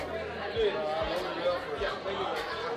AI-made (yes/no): no